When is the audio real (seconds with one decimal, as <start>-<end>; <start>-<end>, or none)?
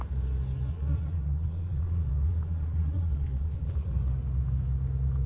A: 0.0-0.7; 3.9-5.3